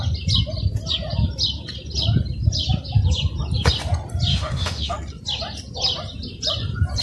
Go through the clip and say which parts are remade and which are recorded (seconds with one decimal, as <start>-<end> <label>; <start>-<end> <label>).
0.0-4.3 recorded; 4.3-4.9 remade; 4.9-7.0 recorded